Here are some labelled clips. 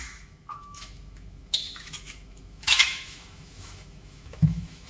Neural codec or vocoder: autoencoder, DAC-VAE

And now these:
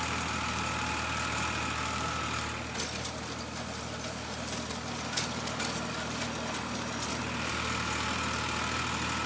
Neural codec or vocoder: none